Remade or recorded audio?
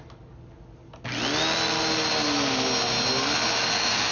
recorded